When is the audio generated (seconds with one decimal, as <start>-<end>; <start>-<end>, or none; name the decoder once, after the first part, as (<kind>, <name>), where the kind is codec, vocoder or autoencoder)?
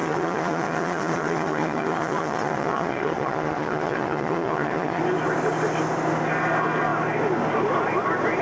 0.0-5.0 (vocoder, Vocos)